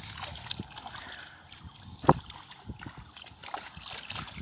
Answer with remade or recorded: remade